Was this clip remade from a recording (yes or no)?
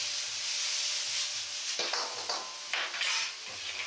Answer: no